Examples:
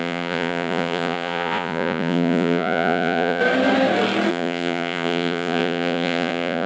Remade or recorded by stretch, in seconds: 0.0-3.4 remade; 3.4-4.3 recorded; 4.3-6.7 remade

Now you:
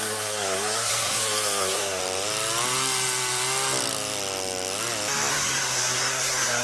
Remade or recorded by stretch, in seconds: 0.0-2.0 remade; 2.0-5.3 recorded; 5.3-6.6 remade

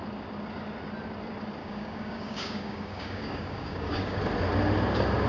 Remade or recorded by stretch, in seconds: 0.0-1.6 recorded; 1.6-4.2 remade; 4.2-5.3 recorded

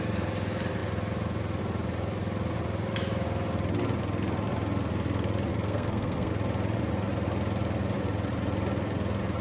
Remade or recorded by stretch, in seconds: 0.0-5.5 recorded; 5.5-6.3 remade; 6.3-9.4 recorded